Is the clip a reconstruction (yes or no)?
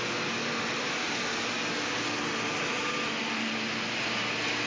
no